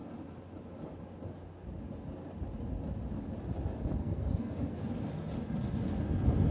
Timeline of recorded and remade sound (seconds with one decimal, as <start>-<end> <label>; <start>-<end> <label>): 0.0-4.0 recorded; 4.0-4.9 remade; 4.9-6.5 recorded